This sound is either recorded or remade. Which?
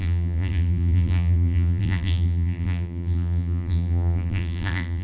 remade